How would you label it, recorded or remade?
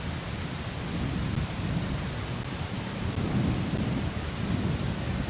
recorded